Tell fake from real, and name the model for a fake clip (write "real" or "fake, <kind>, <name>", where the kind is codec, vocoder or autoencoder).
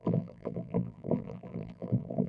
fake, vocoder, BigVGAN v2